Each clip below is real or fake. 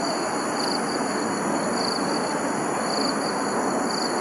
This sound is real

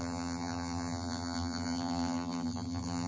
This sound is fake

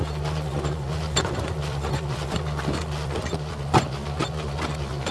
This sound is fake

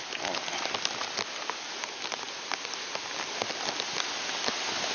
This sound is real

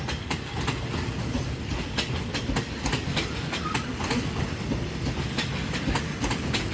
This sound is fake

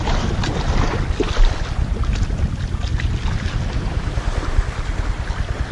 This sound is real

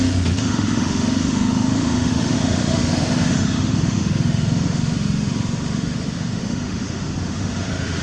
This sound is fake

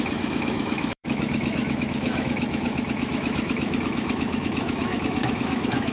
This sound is fake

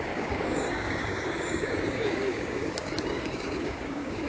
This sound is fake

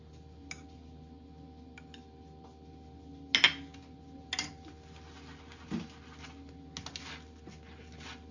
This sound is real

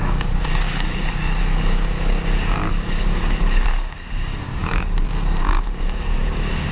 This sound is fake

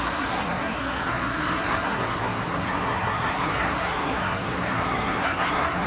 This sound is fake